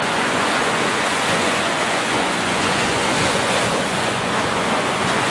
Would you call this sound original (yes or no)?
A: no